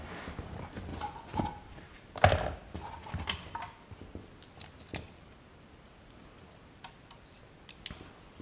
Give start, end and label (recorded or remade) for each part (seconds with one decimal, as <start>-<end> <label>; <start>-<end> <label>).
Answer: 0.0-0.9 recorded; 0.9-1.4 remade; 1.4-8.4 recorded